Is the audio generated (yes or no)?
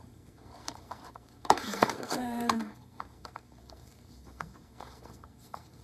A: yes